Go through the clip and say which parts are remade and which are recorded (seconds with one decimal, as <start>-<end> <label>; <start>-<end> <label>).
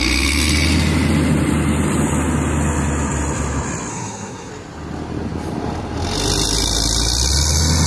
0.0-3.9 recorded; 3.9-4.5 remade; 4.5-7.9 recorded